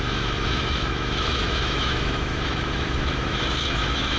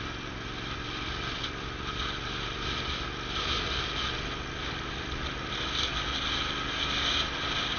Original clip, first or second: second